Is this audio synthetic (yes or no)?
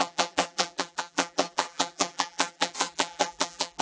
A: yes